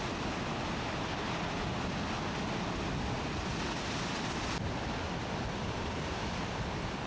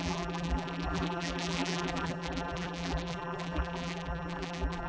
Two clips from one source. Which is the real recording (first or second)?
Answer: first